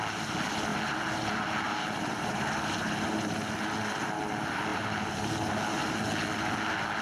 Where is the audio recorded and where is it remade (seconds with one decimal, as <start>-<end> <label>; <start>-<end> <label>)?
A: 0.0-0.7 recorded; 0.7-3.6 remade; 3.6-4.7 recorded; 4.7-5.5 remade; 5.5-7.0 recorded